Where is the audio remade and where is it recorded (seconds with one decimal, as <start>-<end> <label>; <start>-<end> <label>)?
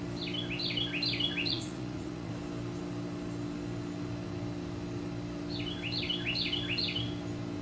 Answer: 0.0-1.5 recorded; 1.5-2.3 remade; 2.3-7.6 recorded